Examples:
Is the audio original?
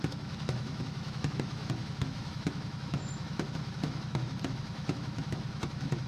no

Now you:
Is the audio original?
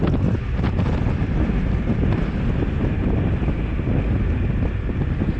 yes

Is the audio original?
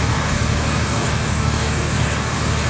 no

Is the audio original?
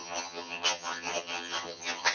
no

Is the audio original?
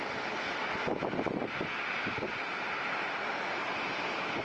yes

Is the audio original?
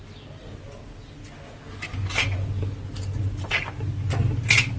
yes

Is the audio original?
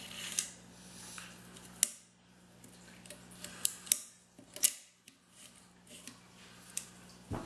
yes